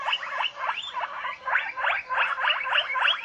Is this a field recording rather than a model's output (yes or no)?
yes